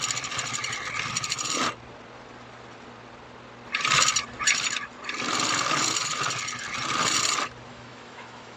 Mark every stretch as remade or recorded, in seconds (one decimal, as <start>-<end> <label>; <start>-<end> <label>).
0.0-7.7 recorded; 7.7-8.6 remade